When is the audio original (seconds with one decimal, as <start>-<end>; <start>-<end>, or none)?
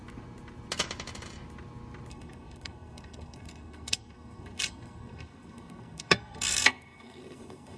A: 0.0-2.1